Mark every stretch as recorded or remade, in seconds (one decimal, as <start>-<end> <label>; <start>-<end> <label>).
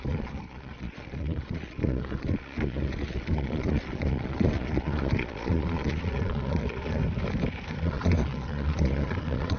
0.0-7.0 remade; 7.0-7.8 recorded; 7.8-9.6 remade